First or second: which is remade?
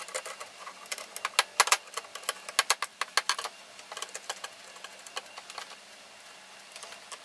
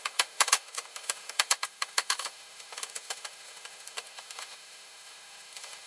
second